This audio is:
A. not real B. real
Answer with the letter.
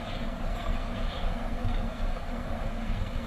A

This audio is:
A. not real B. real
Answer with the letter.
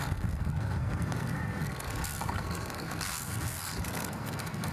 A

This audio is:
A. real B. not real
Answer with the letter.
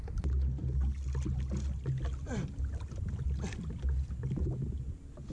A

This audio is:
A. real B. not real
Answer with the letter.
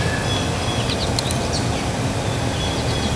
A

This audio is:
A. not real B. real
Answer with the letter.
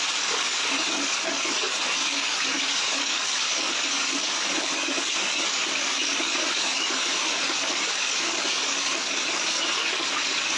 A